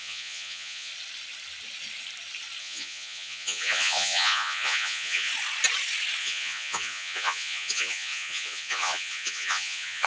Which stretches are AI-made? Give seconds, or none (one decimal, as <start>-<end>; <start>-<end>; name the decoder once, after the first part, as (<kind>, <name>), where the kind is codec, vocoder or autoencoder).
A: 0.0-0.9 (vocoder, Vocos); 2.6-5.3; 6.2-10.1